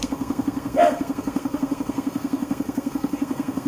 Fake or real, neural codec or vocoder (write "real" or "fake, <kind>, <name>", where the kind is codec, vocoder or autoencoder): fake, codec, SNAC